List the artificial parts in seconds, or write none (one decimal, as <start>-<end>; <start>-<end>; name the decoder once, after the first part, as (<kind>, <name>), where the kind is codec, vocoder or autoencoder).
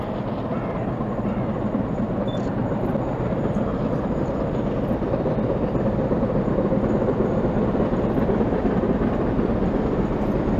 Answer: none